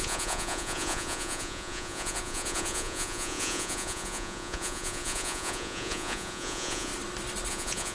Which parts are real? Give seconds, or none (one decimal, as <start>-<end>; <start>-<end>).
6.9-7.5